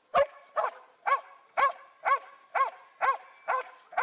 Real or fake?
real